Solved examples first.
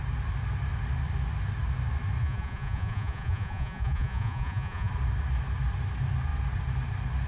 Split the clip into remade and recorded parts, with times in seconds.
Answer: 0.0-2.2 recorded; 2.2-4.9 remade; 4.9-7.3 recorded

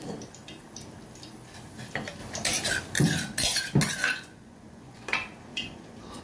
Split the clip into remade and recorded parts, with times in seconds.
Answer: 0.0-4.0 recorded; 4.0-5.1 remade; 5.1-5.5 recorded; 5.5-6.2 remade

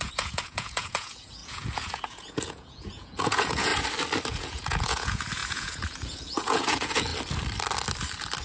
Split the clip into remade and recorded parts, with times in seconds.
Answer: 0.0-3.7 remade; 3.7-4.3 recorded; 4.3-7.1 remade; 7.1-8.4 recorded

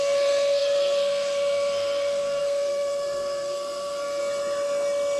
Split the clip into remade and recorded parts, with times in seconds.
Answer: 0.0-4.2 remade; 4.2-5.2 recorded